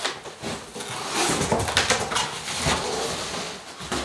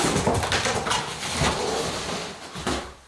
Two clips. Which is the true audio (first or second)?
first